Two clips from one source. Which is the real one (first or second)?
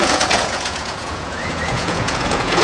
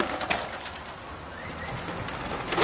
second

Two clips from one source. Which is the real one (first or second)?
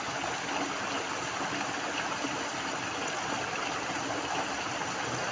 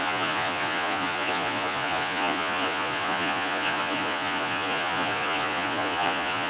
first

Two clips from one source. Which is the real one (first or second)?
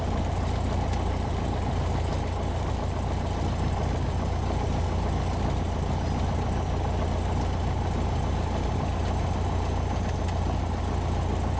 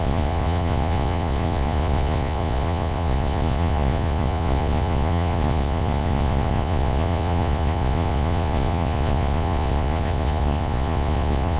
first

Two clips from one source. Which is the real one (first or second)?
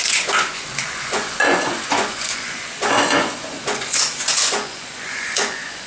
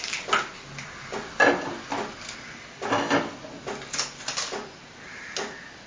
second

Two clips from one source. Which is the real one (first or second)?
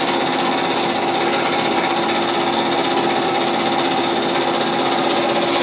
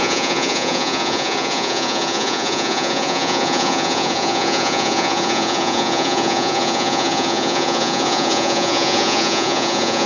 first